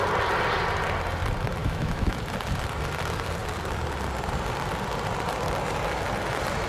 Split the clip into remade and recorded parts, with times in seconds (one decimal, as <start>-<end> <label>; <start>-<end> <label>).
0.0-1.6 recorded; 1.6-2.2 remade; 2.2-6.7 recorded

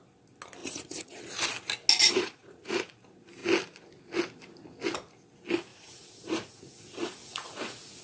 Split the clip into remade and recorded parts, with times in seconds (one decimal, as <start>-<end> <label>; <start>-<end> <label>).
0.0-0.6 recorded; 0.6-1.2 remade; 1.2-2.0 recorded; 2.0-2.9 remade; 2.9-5.7 recorded; 5.7-8.0 remade